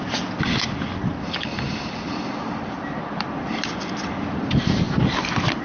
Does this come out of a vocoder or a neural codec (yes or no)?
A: no